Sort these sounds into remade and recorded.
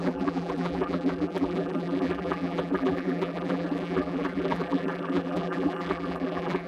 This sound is remade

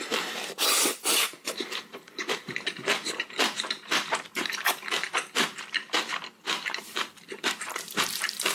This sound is remade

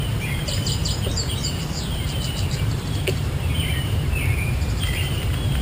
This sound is remade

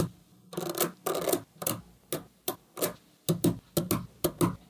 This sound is recorded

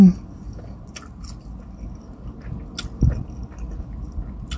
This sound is recorded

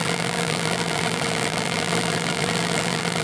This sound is remade